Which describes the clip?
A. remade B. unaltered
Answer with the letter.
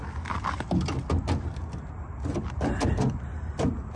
B